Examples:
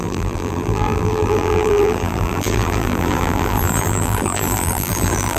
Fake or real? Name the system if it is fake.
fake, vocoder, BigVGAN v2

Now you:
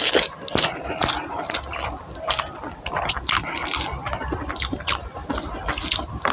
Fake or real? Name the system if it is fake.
real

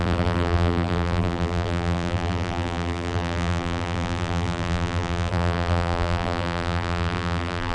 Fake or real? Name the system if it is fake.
fake, vocoder, BigVGAN v2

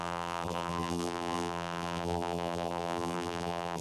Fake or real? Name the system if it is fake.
fake, vocoder, BigVGAN v2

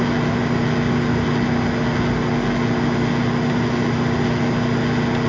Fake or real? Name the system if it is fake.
real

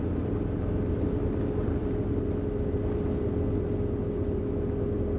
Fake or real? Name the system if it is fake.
real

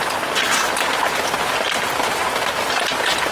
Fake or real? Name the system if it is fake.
real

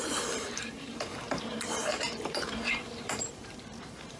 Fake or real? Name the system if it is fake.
fake, vocoder, BigVGAN v2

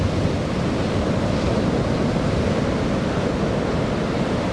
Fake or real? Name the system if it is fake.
real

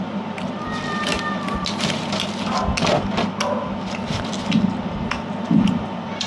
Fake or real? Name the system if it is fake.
real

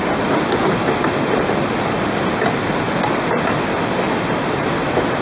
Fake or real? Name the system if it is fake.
real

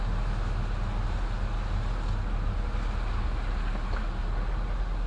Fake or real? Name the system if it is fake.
real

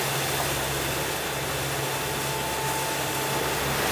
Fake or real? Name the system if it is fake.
real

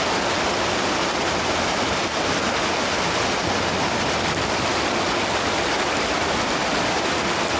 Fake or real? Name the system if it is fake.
real